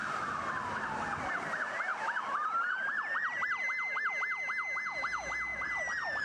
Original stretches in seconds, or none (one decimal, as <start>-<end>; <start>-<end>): 0.0-1.9; 4.1-5.5